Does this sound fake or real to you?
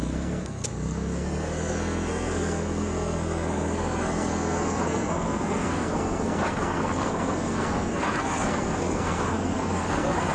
fake